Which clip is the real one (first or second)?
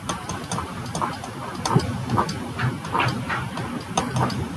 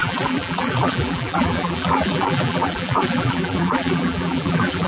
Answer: first